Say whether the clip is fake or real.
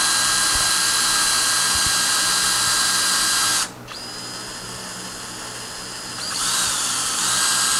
real